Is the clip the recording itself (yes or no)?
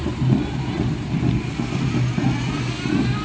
yes